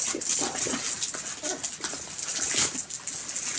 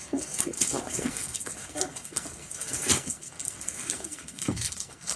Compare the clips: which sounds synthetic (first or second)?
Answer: second